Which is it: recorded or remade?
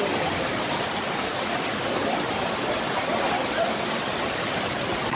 remade